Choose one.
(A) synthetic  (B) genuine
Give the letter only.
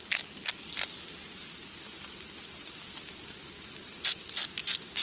B